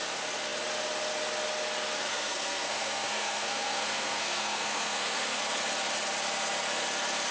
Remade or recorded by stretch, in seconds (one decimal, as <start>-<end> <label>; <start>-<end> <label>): 0.0-2.1 recorded; 2.1-5.4 remade; 5.4-7.3 recorded